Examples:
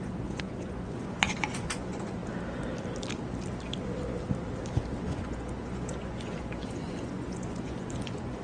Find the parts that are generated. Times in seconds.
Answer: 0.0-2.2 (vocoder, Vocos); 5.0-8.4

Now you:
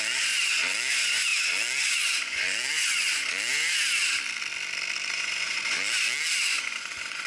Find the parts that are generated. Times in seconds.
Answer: 0.0-3.5 (vocoder, Vocos); 5.1-7.3

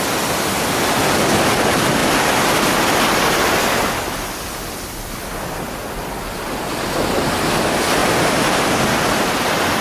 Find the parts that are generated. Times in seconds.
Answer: 8.0-8.8 (vocoder, BigVGAN v2)

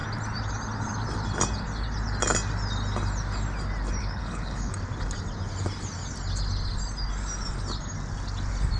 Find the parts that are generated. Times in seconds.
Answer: 4.0-4.7 (codec, HILCodec)

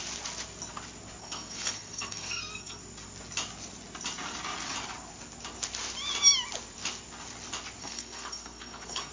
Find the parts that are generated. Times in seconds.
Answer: 1.2-2.8 (codec, SNAC); 7.8-9.1